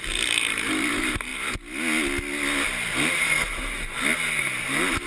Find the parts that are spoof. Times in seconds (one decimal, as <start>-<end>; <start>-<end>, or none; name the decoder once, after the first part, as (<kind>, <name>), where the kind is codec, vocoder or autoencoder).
0.0-1.3 (vocoder, BigVGAN v2); 4.4-5.1